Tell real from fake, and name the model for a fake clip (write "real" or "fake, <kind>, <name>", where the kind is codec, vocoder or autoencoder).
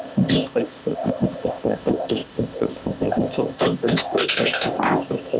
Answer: fake, codec, ZipCodec